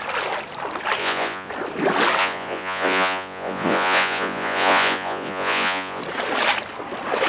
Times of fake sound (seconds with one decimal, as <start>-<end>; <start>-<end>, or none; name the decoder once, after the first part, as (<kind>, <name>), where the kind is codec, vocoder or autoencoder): 1.0-1.5 (vocoder, Vocos); 2.2-6.0